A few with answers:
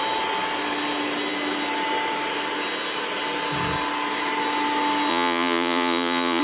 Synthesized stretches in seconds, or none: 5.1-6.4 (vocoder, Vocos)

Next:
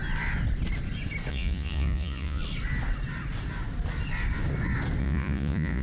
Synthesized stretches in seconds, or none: 1.3-2.4 (vocoder, Vocos); 5.0-5.8

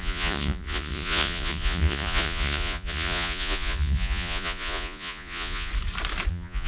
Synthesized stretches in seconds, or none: 0.0-5.7 (vocoder, Vocos); 6.3-6.7

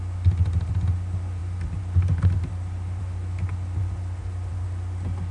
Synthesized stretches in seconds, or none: none

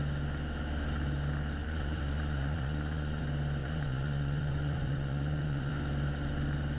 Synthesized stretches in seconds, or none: 1.6-3.2 (vocoder, Vocos); 3.6-5.7

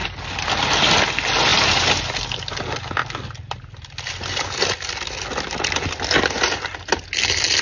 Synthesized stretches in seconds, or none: none